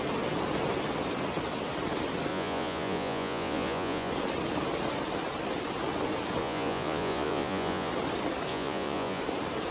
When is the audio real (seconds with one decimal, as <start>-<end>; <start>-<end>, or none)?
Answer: 0.0-2.3; 4.1-6.4; 7.9-8.5; 9.2-9.7